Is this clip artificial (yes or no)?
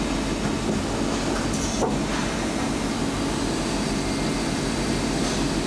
no